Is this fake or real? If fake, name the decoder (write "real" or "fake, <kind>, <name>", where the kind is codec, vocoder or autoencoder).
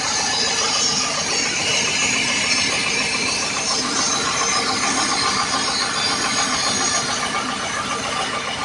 fake, vocoder, BigVGAN v2